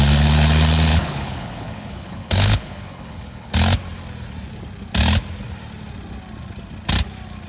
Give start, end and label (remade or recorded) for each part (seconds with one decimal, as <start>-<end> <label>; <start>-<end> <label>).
0.0-0.9 recorded; 0.9-3.5 remade; 3.5-7.5 recorded